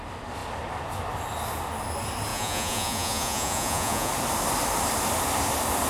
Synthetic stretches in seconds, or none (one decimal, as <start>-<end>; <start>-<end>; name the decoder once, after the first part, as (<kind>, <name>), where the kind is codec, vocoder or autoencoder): 2.3-4.1 (vocoder, Vocos)